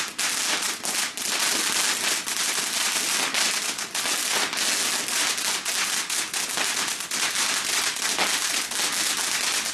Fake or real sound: real